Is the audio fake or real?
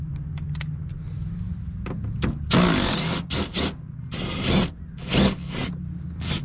real